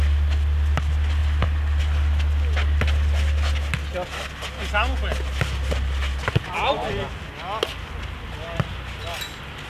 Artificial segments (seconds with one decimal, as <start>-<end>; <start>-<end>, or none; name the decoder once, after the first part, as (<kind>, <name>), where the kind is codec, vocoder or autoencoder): none